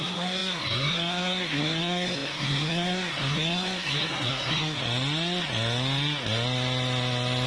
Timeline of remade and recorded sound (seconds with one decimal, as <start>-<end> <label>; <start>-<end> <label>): 0.0-4.8 remade; 4.8-7.5 recorded